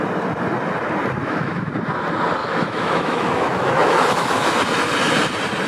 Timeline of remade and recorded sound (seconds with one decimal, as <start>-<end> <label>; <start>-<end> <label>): 0.0-1.2 recorded; 1.2-1.7 remade; 1.7-2.4 recorded; 2.4-4.5 remade; 4.5-5.7 recorded